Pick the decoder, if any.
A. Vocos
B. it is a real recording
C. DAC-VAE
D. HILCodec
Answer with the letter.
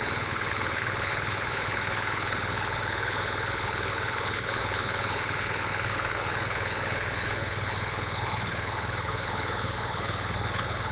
D